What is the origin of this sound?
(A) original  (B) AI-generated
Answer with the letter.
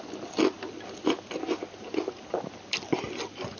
A